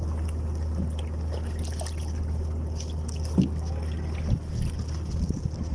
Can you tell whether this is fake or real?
real